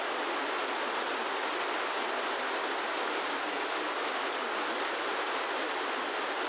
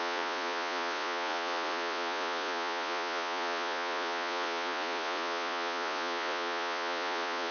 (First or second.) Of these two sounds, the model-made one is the second